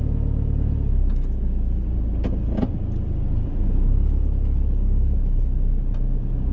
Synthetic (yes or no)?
no